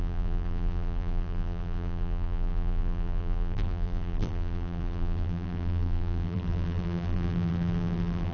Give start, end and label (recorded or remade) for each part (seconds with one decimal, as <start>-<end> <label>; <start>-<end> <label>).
0.0-8.3 remade